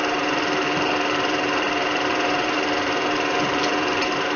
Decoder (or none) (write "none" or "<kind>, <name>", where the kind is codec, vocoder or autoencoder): vocoder, BigVGAN v2